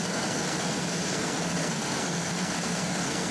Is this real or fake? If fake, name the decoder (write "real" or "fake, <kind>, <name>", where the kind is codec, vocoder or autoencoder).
fake, codec, SNAC